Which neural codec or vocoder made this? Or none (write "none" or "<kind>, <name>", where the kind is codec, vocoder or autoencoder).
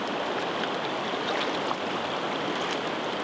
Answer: none